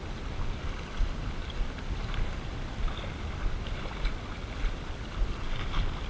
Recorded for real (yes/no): yes